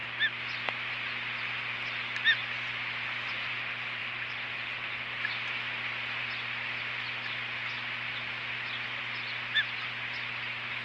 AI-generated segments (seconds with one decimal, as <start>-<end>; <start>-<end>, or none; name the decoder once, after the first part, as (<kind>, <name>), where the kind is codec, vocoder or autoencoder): none